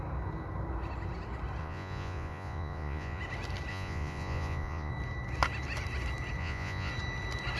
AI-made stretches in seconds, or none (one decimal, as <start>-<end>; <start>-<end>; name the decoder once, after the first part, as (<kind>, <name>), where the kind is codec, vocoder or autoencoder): 1.6-3.2 (vocoder, Vocos); 3.7-4.9; 6.4-6.9